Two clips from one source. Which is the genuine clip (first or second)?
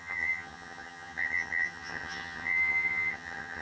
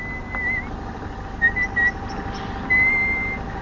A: second